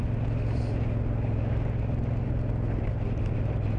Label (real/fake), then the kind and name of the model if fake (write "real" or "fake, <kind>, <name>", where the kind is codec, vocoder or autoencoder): real